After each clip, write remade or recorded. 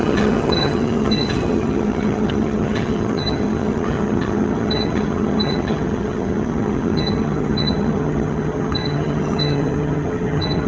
remade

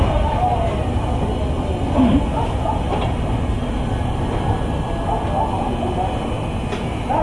recorded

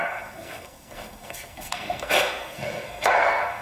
remade